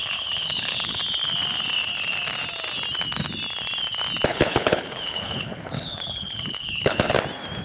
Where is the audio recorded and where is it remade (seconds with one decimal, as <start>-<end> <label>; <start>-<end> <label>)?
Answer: 0.0-1.0 remade; 1.0-4.3 recorded; 4.3-7.1 remade; 7.1-7.6 recorded

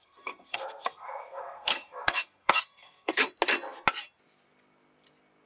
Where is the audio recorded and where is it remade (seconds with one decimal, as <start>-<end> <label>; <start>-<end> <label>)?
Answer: 0.0-3.3 remade; 3.3-5.5 recorded

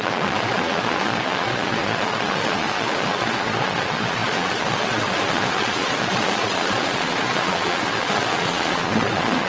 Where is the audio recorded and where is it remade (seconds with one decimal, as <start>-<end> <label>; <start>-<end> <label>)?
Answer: 0.0-9.5 remade

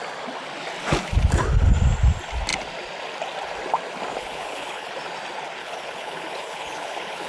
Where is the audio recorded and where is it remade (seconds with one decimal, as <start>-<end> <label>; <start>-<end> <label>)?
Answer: 0.0-4.2 recorded; 4.2-4.9 remade; 4.9-5.6 recorded; 5.6-7.3 remade